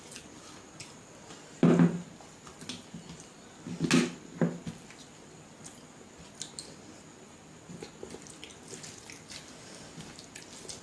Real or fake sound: real